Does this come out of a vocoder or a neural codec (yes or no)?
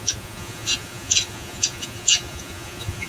yes